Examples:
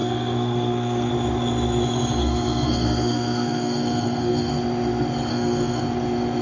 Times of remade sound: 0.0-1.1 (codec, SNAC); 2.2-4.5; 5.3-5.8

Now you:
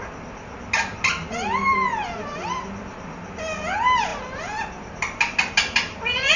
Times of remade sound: none

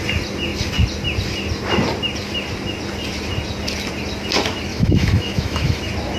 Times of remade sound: 4.7-5.8 (autoencoder, DAC-VAE)

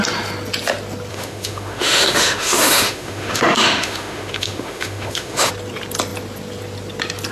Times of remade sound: 1.1-5.5 (autoencoder, DAC-VAE)